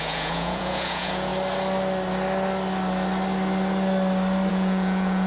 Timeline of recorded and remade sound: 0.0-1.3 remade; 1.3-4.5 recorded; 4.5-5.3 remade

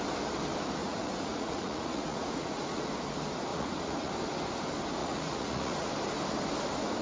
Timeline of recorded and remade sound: 0.0-0.8 recorded; 0.8-2.8 remade; 2.8-3.5 recorded; 3.5-4.1 remade; 4.1-5.0 recorded; 5.0-5.9 remade; 5.9-7.0 recorded

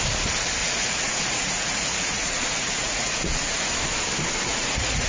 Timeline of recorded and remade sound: 0.0-0.6 recorded; 0.6-3.7 remade; 3.7-4.5 recorded; 4.5-5.1 remade

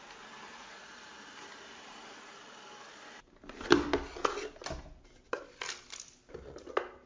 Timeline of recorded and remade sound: 0.0-0.5 recorded; 0.5-1.1 remade; 1.1-7.1 recorded